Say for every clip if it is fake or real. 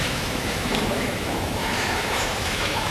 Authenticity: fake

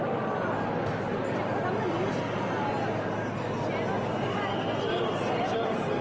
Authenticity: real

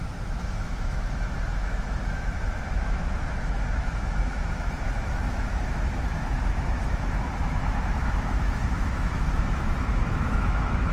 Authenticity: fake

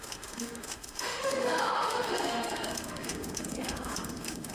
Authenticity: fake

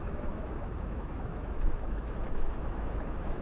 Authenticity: fake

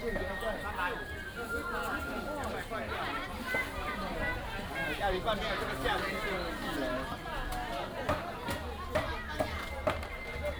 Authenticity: real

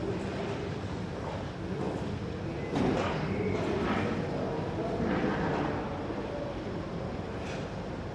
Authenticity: real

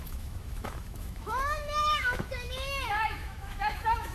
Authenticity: fake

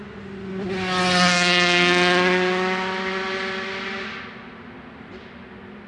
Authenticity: real